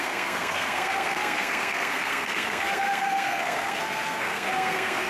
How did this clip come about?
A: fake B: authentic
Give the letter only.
A